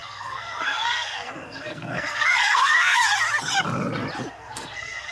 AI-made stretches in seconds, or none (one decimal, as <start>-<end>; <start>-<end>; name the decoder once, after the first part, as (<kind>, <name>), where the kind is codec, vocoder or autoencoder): 0.0-3.0 (codec, SNAC); 4.3-5.1